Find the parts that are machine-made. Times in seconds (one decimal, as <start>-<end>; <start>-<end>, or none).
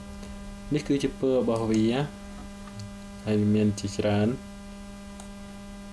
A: none